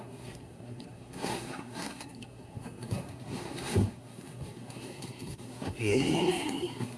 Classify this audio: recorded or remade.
remade